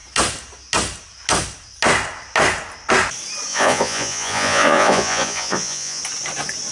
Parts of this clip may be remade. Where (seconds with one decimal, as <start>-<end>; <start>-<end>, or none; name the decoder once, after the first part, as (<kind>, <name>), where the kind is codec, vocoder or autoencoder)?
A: 3.5-6.0 (vocoder, Vocos)